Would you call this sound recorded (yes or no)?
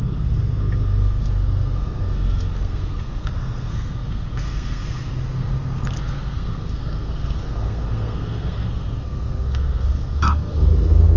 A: no